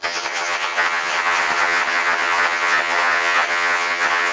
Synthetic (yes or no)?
yes